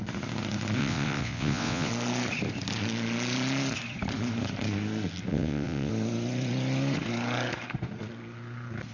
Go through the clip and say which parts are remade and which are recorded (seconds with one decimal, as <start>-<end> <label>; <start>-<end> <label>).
0.0-0.8 recorded; 0.8-1.9 remade; 1.9-5.3 recorded; 5.3-5.9 remade; 5.9-8.9 recorded